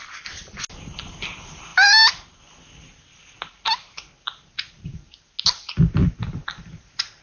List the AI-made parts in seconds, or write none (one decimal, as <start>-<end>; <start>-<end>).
none